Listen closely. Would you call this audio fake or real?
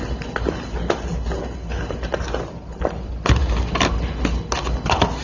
real